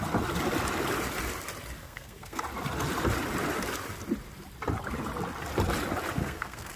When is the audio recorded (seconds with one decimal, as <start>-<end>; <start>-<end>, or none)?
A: 0.0-1.8; 2.4-6.2